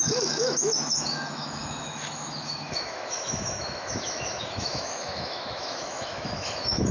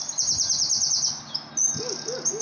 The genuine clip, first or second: second